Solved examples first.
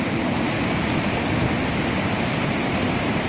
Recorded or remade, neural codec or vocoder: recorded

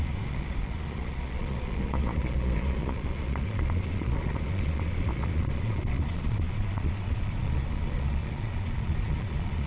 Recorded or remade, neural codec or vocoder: remade, vocoder, Vocos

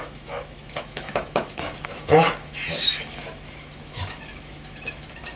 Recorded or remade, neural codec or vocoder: remade, autoencoder, DAC-VAE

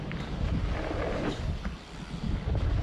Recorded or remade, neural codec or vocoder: recorded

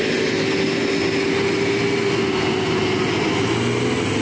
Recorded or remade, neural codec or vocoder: recorded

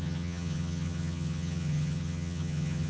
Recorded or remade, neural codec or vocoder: remade, vocoder, HiFi-GAN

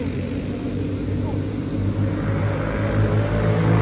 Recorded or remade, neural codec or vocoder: recorded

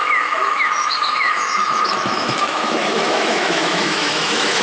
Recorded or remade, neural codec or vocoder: remade, autoencoder, DAC-VAE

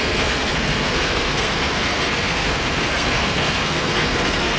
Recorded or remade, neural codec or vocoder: remade, codec, SNAC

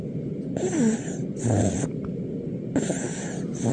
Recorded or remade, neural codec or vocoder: recorded